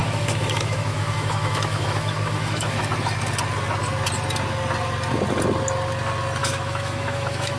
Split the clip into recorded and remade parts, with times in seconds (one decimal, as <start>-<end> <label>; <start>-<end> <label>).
0.0-2.9 remade; 2.9-6.4 recorded; 6.4-7.6 remade

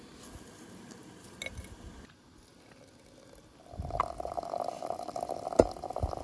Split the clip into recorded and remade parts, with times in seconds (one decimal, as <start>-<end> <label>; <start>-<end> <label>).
0.0-6.2 recorded